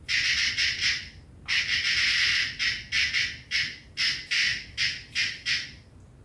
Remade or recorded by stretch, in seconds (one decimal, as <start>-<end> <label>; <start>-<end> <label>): 0.0-6.2 recorded